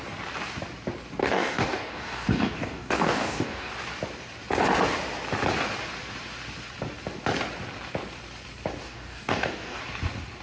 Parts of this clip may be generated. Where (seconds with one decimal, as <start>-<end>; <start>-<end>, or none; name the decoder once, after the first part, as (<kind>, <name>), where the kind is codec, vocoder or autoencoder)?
1.2-3.7 (codec, DAC); 8.8-9.8